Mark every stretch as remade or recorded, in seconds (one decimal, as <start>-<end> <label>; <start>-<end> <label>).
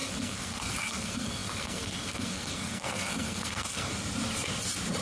0.0-3.9 remade; 3.9-5.0 recorded